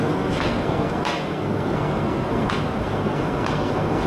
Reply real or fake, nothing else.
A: fake